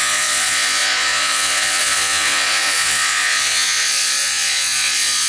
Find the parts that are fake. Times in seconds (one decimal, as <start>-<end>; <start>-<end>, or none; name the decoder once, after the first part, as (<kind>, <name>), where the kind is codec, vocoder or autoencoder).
0.0-5.3 (vocoder, Vocos)